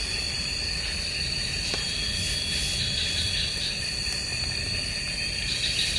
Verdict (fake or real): real